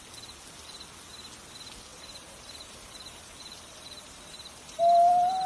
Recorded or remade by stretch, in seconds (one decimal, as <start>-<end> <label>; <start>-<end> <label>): 0.0-1.9 recorded; 1.9-5.5 remade

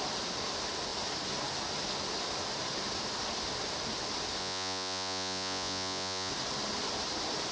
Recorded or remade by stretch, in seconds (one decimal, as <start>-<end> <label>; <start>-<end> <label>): 0.0-4.4 recorded; 4.4-6.3 remade; 6.3-7.5 recorded